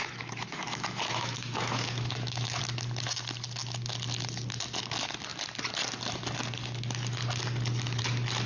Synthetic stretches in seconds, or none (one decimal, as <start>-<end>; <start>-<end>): 0.0-2.6